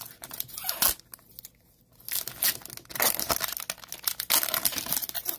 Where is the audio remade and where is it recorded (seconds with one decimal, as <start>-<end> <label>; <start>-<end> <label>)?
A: 0.0-5.4 recorded